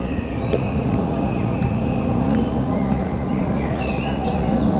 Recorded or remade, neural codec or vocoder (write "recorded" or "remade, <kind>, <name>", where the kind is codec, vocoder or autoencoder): remade, vocoder, Vocos